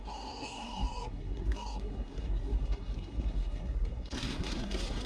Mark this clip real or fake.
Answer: fake